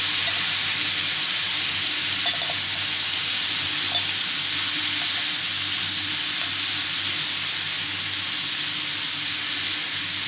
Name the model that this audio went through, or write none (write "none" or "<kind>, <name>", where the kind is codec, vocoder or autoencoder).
none